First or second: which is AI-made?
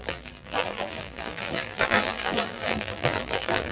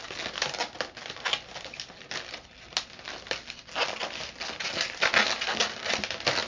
first